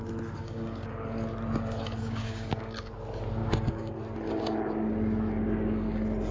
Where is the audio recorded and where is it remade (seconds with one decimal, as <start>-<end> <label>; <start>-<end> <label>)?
0.0-0.4 recorded; 0.4-0.9 remade; 0.9-2.0 recorded; 2.0-2.9 remade; 2.9-3.4 recorded; 3.4-4.0 remade; 4.0-6.3 recorded